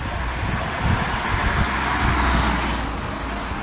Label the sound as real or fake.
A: real